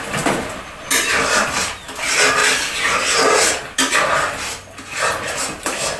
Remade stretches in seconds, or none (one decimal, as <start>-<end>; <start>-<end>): none